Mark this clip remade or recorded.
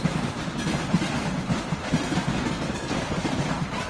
recorded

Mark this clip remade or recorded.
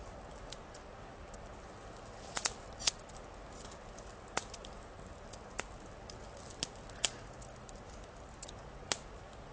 recorded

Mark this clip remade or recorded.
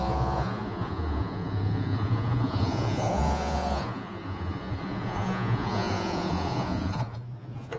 remade